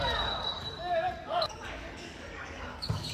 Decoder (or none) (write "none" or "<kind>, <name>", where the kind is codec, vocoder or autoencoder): codec, DAC